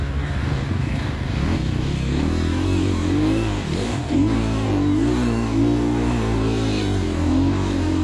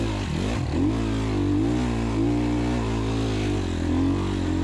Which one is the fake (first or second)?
first